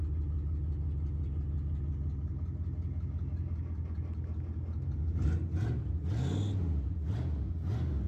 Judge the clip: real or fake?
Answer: real